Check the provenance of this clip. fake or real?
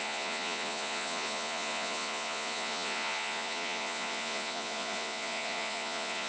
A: fake